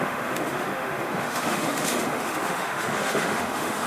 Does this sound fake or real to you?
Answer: fake